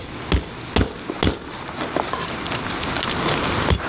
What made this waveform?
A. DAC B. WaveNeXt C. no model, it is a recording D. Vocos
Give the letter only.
C